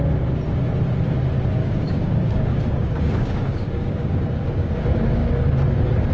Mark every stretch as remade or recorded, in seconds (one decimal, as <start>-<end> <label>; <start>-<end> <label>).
0.0-1.6 recorded; 1.6-5.3 remade; 5.3-6.1 recorded

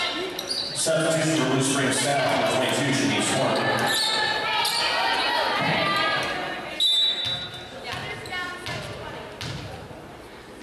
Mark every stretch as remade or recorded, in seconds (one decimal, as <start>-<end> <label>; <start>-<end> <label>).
0.0-10.6 recorded

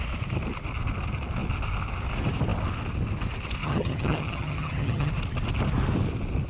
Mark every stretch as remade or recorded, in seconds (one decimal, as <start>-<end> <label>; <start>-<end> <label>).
0.0-3.6 recorded; 3.6-5.1 remade; 5.1-6.5 recorded

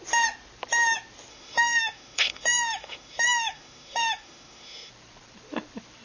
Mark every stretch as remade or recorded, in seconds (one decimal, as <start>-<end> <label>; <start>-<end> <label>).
0.0-1.3 recorded; 1.3-4.9 remade; 4.9-6.0 recorded

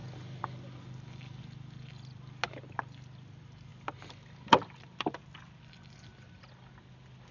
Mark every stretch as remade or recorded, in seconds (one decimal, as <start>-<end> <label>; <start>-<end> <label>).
0.0-1.4 remade; 1.4-3.7 recorded; 3.7-5.2 remade; 5.2-6.1 recorded; 6.1-6.7 remade; 6.7-7.3 recorded

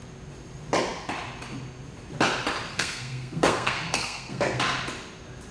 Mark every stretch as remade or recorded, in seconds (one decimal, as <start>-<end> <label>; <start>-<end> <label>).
0.0-2.7 recorded; 2.7-4.6 remade; 4.6-5.5 recorded

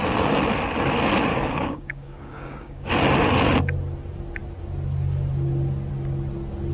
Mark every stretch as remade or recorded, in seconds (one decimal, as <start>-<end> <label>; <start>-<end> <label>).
0.0-1.3 recorded; 1.3-2.9 remade; 2.9-6.7 recorded